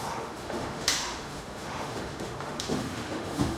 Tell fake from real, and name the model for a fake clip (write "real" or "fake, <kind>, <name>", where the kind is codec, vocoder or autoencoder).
fake, autoencoder, DAC-VAE